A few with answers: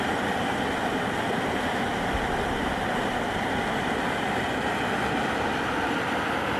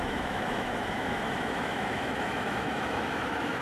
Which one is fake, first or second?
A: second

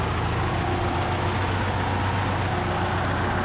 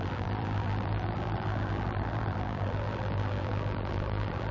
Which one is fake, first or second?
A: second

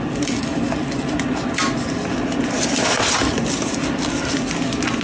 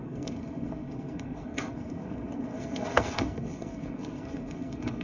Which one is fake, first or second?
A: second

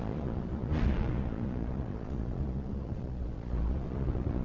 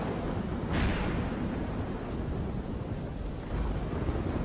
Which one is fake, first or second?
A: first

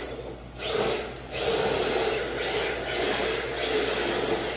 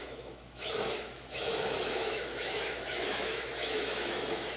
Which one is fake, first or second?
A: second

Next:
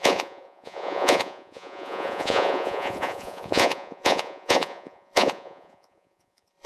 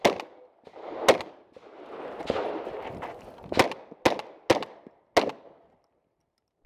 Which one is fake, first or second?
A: first